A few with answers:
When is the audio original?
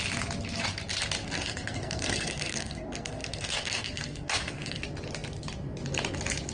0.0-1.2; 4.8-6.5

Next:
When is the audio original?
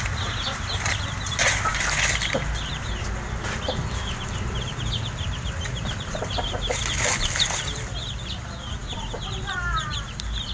0.0-10.5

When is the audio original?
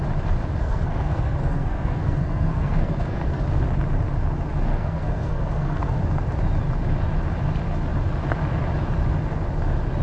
0.0-0.6; 3.4-4.7; 6.0-10.0